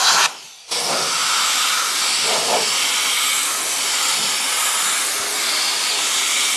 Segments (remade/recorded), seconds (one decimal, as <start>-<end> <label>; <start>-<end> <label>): 0.0-6.6 recorded